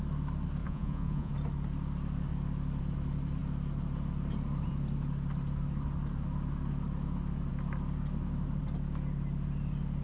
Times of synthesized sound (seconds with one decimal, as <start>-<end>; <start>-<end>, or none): 0.6-1.3